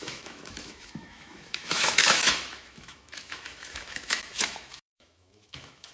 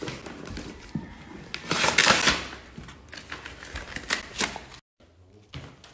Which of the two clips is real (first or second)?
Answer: second